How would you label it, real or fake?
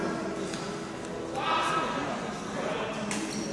real